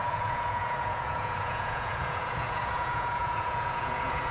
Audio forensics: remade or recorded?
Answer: remade